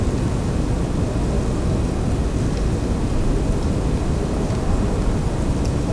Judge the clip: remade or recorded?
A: recorded